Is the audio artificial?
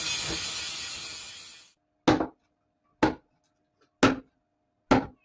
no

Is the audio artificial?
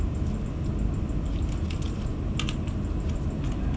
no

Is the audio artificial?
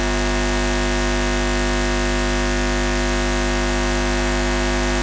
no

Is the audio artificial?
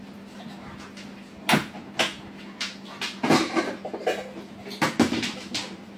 no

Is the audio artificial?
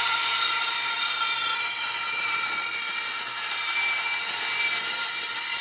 no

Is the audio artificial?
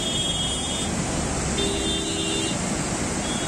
no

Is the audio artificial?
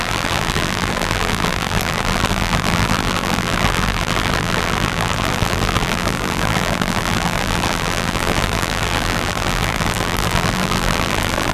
yes